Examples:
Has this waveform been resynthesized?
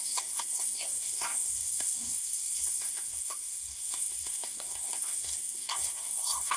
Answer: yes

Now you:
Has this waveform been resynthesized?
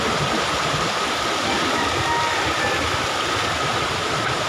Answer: no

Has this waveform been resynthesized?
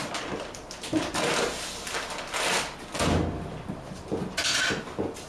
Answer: no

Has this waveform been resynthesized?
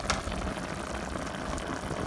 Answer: no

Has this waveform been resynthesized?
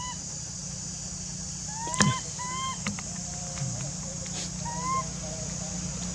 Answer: no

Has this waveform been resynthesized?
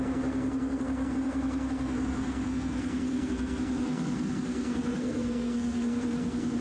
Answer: yes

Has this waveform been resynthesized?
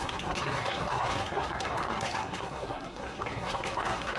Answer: yes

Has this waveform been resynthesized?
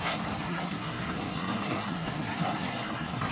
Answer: yes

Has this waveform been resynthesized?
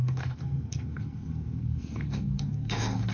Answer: yes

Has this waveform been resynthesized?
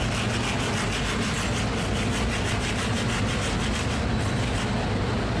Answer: no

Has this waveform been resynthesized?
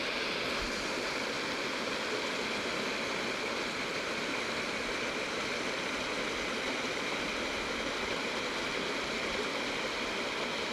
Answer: no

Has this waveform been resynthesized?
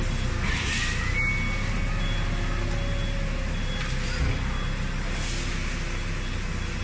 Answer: no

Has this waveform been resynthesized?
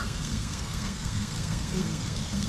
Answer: yes